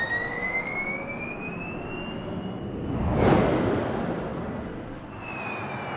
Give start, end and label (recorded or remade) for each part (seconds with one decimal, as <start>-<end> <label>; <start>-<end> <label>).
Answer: 0.0-6.0 recorded